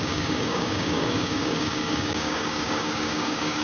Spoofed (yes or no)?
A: yes